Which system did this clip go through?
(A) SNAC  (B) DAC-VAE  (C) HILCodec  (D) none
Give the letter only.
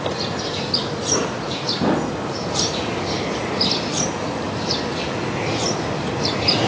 D